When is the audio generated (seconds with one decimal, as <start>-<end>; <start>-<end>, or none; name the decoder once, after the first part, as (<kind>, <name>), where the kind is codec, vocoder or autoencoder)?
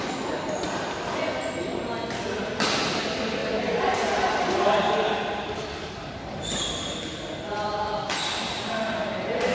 3.4-6.4 (vocoder, BigVGAN v2)